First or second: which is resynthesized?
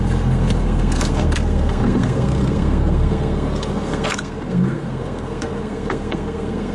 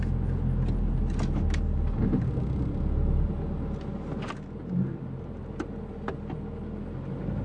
first